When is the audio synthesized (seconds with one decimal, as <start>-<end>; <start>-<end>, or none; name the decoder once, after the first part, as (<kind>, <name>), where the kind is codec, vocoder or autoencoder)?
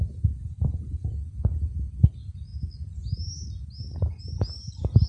none